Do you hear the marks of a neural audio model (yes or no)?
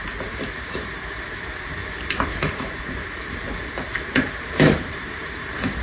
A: yes